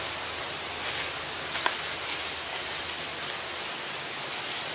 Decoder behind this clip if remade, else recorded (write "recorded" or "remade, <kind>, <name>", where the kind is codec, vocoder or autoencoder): recorded